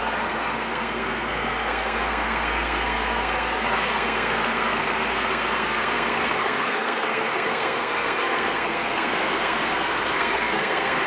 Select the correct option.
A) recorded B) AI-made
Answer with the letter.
B